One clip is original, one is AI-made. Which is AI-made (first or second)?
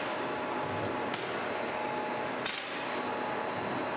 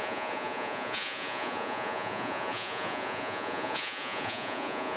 second